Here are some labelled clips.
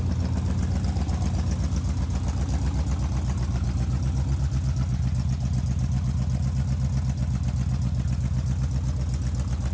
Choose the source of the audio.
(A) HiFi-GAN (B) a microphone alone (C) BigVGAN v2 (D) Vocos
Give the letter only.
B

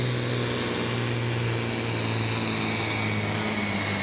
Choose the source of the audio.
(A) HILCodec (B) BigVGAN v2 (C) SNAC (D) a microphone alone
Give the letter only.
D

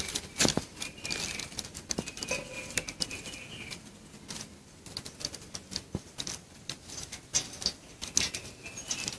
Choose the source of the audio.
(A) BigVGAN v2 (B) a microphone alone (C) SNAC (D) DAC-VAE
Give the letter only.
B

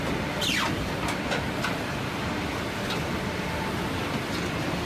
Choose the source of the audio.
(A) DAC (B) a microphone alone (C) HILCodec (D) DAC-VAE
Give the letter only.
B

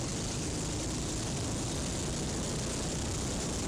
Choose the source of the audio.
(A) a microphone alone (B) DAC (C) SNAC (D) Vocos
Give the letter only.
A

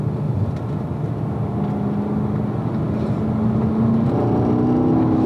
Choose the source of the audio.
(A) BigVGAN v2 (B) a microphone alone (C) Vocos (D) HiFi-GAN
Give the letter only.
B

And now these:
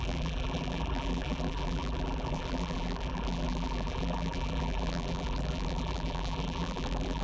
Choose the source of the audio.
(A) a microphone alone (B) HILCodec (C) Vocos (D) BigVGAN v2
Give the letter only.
D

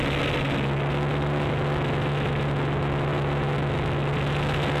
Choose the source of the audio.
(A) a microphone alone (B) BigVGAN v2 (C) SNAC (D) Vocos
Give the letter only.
A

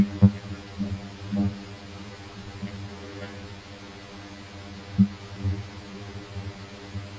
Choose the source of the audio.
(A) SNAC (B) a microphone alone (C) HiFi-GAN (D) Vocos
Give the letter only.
B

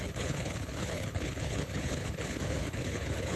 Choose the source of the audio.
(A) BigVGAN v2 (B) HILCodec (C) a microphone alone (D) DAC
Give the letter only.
B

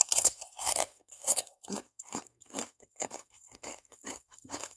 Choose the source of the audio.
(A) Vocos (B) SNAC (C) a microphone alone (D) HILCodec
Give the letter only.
B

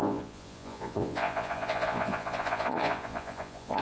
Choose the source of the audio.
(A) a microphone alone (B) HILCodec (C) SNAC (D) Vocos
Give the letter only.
D